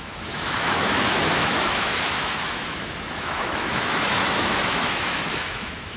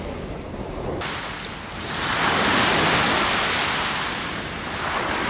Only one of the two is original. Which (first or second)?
second